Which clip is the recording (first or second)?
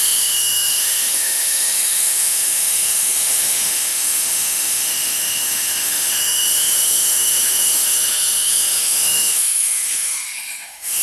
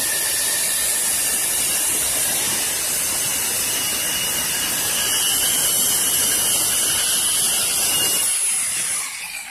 second